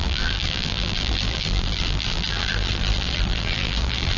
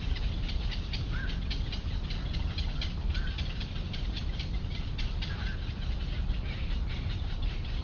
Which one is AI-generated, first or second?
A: first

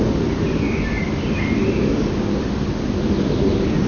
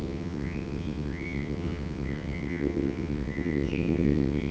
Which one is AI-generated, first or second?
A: second